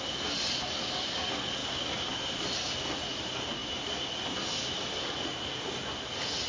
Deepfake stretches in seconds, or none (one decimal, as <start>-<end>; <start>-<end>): none